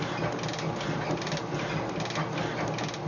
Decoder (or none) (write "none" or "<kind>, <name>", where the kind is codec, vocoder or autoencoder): none